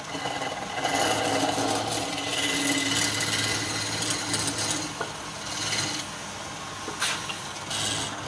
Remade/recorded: recorded